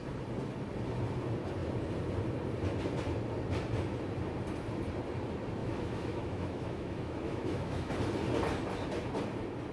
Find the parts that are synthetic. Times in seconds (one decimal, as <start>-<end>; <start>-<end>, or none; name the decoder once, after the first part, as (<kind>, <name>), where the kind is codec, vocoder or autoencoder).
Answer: 5.6-7.9 (autoencoder, DAC-VAE)